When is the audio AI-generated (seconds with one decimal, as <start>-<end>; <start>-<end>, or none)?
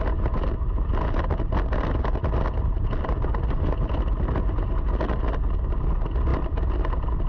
none